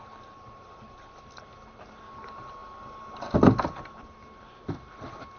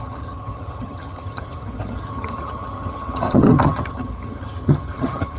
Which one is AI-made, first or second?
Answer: second